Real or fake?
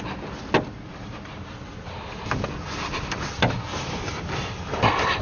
fake